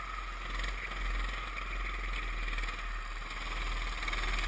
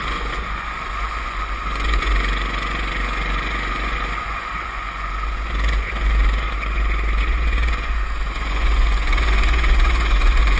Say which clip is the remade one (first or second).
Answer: second